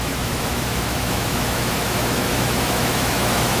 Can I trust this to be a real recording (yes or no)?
no